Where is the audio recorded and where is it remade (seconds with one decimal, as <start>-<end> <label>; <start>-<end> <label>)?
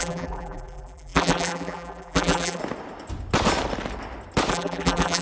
0.0-2.6 remade; 2.6-4.5 recorded; 4.5-5.2 remade